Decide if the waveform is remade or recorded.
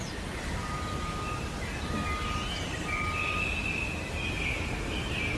recorded